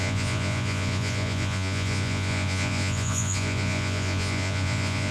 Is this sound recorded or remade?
remade